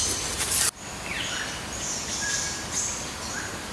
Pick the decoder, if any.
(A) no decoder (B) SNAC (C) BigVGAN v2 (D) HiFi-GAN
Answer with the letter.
C